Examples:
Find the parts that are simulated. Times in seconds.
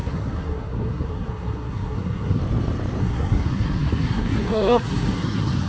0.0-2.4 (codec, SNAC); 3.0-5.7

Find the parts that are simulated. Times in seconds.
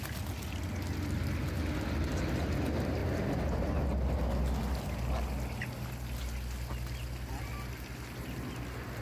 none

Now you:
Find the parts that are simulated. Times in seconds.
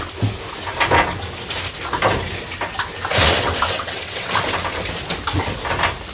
3.2-4.3 (vocoder, WaveNeXt)